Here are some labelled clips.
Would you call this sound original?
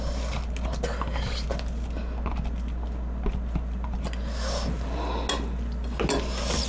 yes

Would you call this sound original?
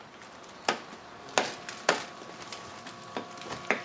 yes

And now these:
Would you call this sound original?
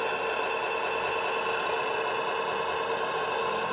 yes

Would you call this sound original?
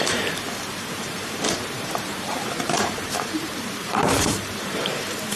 no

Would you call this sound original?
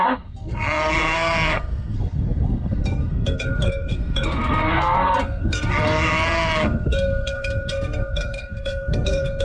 no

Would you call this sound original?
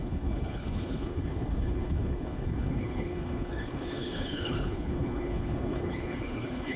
no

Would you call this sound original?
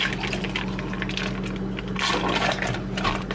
yes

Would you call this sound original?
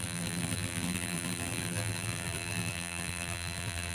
no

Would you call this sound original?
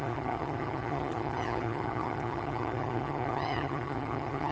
no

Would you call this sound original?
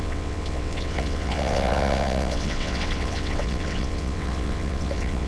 no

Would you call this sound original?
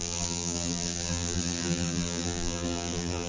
no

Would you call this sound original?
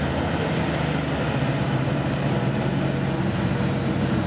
yes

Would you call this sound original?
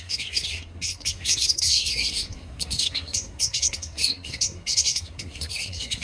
no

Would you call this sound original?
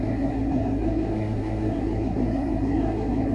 no